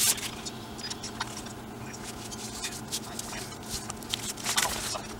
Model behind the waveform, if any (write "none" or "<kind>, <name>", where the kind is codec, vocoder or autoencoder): none